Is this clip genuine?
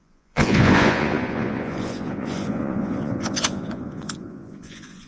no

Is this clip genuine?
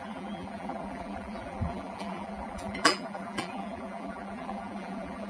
no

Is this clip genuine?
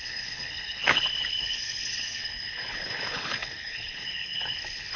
no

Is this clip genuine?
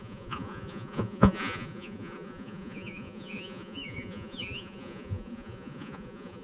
no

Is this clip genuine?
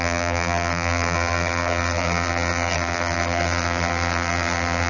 no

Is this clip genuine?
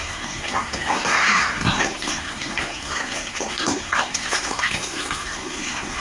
no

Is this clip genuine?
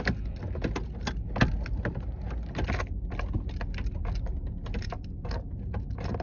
yes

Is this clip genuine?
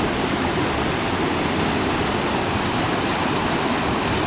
yes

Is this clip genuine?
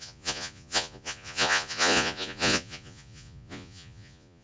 no